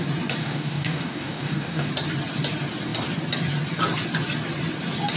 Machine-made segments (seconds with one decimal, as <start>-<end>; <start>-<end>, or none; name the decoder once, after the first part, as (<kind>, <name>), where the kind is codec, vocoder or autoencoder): 0.4-1.9 (codec, DAC)